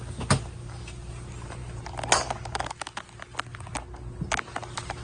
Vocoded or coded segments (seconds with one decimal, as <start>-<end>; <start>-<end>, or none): none